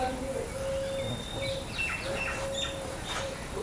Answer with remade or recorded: recorded